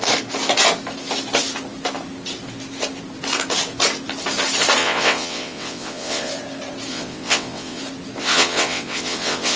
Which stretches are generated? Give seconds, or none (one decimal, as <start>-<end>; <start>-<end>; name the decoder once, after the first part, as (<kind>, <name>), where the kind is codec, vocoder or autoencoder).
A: 4.8-6.3 (vocoder, WaveNeXt); 6.9-7.8; 8.2-9.6